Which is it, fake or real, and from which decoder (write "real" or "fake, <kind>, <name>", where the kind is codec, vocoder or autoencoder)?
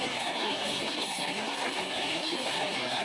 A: fake, codec, SNAC